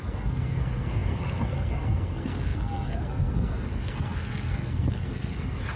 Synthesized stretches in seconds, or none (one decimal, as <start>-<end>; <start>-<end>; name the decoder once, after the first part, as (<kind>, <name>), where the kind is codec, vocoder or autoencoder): 0.0-5.8 (codec, SNAC)